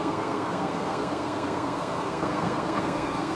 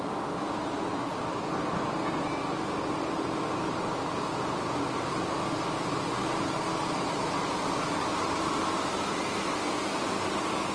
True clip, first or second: second